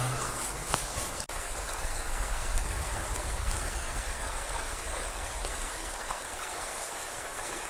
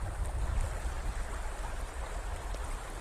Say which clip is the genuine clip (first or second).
second